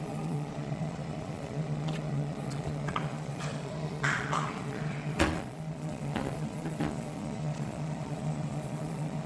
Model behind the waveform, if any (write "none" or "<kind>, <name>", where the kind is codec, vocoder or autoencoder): vocoder, Vocos